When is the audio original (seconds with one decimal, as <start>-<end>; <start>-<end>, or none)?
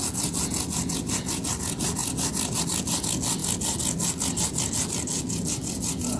0.0-2.0; 2.6-6.2